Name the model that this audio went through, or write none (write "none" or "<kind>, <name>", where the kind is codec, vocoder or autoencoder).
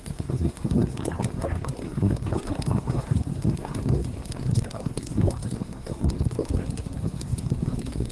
codec, SNAC